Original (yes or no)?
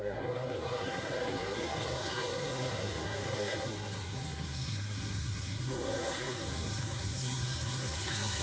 no